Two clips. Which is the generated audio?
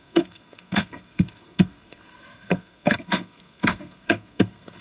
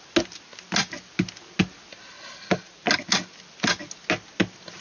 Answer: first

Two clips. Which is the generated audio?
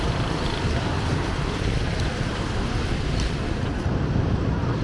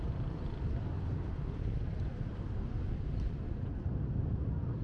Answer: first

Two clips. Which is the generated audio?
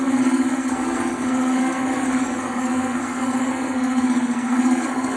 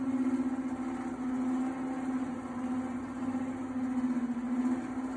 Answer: first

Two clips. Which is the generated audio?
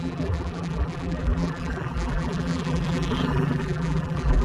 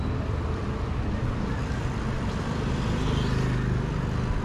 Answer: first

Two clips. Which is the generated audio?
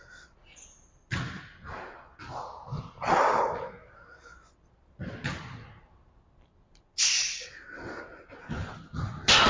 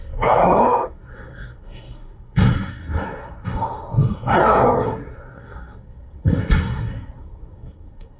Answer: second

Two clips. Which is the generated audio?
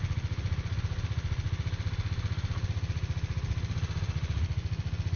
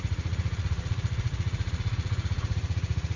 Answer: second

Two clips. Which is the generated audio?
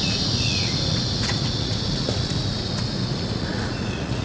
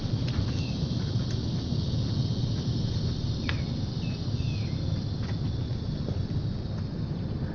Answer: first